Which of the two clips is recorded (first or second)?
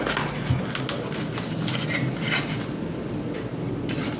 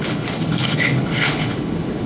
first